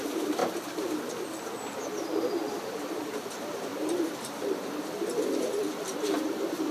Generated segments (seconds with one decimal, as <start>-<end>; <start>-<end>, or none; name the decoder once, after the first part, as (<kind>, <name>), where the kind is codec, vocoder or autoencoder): 0.4-1.4 (vocoder, BigVGAN v2); 3.7-5.4